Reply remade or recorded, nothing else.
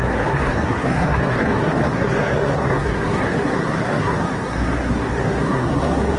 remade